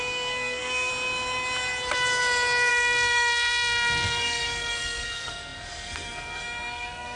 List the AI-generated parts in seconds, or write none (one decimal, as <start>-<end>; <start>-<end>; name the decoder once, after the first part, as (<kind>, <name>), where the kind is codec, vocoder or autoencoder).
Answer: 0.0-0.9 (codec, SNAC); 2.7-7.2